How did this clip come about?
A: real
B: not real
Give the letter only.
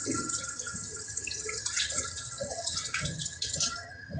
B